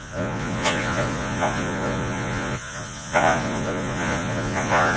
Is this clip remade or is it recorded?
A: remade